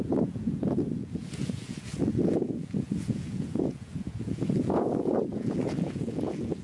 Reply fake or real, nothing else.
fake